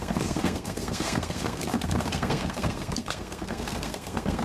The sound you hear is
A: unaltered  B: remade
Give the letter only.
B